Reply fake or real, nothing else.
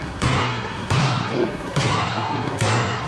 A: fake